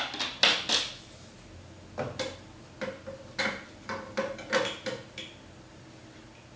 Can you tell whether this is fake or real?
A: real